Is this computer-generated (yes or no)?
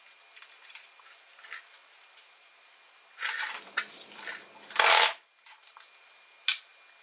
no